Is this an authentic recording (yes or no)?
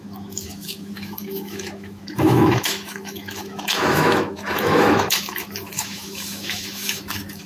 no